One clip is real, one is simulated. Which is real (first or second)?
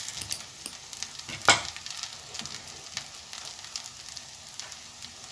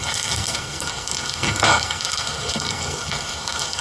first